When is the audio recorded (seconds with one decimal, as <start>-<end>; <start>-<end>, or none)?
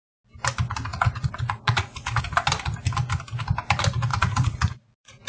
0.0-0.9; 2.2-4.1